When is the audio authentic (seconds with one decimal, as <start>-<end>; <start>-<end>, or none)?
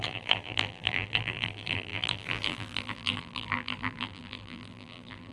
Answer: none